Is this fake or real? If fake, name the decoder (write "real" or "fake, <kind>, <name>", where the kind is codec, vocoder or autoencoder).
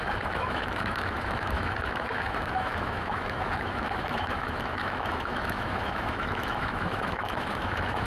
fake, autoencoder, DAC-VAE